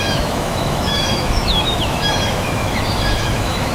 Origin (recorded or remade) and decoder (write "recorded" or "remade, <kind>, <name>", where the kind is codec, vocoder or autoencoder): remade, autoencoder, DAC-VAE